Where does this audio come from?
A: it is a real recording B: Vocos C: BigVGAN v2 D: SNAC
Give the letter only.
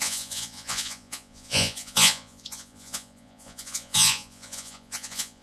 B